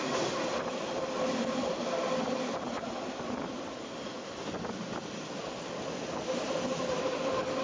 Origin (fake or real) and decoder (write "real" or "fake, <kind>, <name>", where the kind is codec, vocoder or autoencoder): real